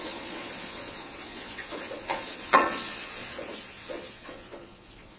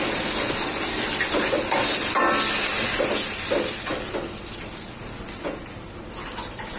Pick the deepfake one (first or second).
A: first